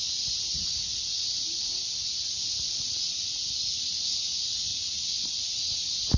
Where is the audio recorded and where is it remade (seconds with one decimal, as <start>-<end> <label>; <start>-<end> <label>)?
0.0-0.9 recorded; 0.9-3.0 remade; 3.0-4.7 recorded; 4.7-5.6 remade; 5.6-6.2 recorded